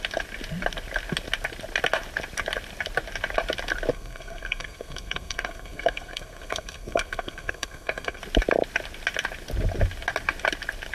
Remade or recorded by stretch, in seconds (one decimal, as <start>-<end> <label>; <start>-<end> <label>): 0.0-3.9 recorded; 3.9-8.2 remade; 8.2-10.9 recorded